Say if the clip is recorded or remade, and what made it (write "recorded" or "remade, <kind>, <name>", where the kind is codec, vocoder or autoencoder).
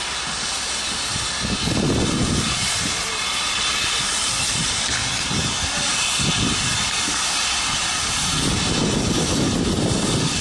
recorded